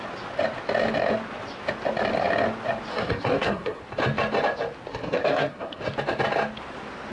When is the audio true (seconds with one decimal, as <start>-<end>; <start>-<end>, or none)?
0.0-2.9; 3.8-4.9; 5.8-7.1

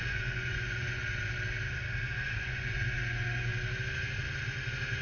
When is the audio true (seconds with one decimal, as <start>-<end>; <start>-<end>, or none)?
1.0-2.1; 3.5-5.0

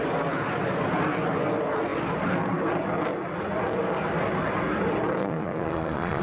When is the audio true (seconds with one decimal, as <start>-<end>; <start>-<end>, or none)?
0.0-5.2

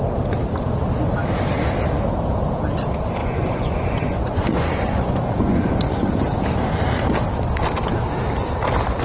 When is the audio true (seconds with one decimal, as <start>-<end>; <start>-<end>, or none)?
0.0-3.2; 6.1-9.0

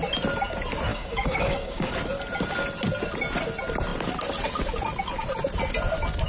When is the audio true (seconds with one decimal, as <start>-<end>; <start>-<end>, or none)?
0.0-0.9; 1.9-6.3